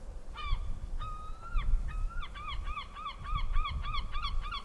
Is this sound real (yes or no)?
no